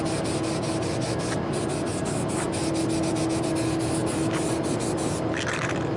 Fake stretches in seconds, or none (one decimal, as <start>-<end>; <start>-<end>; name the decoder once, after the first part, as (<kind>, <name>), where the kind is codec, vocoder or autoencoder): none